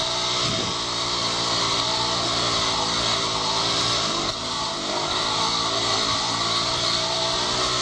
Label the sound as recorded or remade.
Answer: recorded